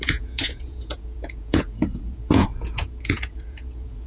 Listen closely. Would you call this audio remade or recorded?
remade